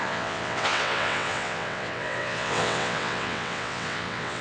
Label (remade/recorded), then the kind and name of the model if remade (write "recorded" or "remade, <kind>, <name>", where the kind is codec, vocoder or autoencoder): remade, vocoder, WaveNeXt